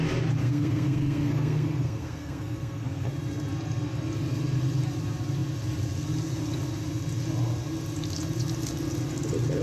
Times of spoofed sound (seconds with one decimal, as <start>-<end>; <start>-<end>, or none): 0.4-3.1